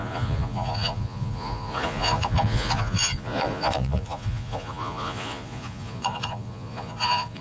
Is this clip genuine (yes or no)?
no